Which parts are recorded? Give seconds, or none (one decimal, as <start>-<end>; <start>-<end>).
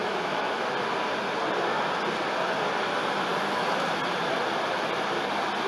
0.6-5.7